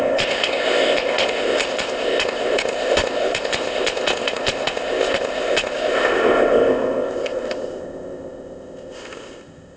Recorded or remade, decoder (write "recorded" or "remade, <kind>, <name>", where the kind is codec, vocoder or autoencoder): remade, codec, ZipCodec